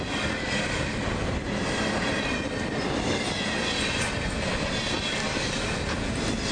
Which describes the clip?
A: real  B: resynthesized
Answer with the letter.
A